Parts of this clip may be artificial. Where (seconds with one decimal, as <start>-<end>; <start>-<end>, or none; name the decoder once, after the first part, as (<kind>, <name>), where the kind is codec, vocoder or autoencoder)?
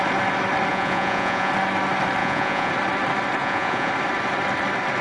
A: 0.7-1.5 (vocoder, Vocos); 2.2-2.7; 3.4-3.9